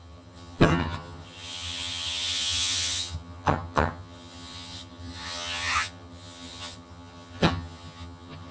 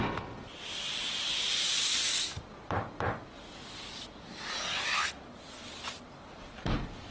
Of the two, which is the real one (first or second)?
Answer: second